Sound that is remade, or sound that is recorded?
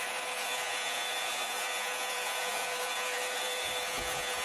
remade